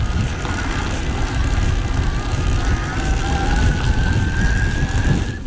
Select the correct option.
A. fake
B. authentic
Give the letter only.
B